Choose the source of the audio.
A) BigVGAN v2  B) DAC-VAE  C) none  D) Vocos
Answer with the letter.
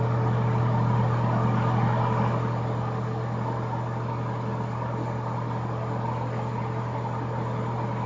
C